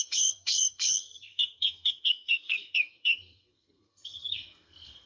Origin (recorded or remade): remade